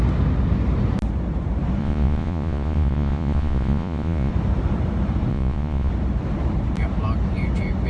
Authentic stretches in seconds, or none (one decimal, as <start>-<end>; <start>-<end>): 0.0-1.8; 4.3-5.3; 5.9-7.9